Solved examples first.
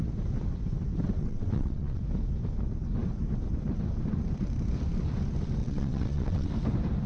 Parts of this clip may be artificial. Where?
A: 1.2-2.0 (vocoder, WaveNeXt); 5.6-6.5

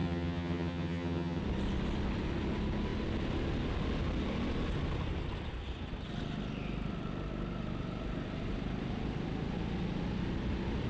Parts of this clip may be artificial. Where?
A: 0.0-1.4 (vocoder, HiFi-GAN)

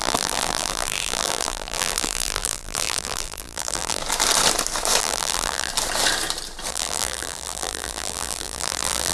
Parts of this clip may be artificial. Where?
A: 0.0-4.0 (vocoder, BigVGAN v2); 5.0-5.7; 6.7-9.1

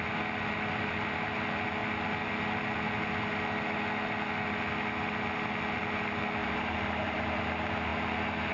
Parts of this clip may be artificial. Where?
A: 6.4-7.4 (vocoder, BigVGAN v2)